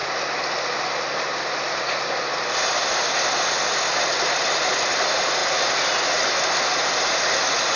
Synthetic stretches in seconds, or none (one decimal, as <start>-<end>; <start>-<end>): none